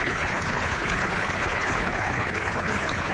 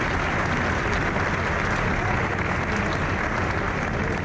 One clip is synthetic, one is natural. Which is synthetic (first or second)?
first